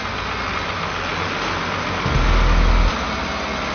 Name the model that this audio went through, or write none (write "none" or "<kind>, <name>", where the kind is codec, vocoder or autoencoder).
none